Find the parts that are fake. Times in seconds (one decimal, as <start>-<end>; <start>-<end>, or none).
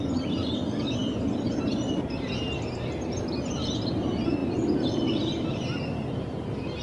none